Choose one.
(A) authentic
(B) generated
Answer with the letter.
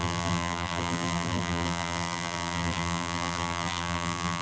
B